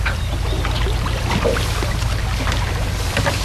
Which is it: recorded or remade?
recorded